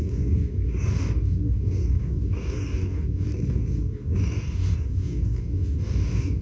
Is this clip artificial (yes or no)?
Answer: yes